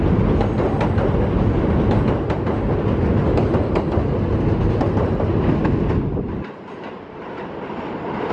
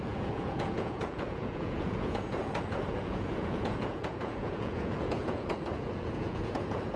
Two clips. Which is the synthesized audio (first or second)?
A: second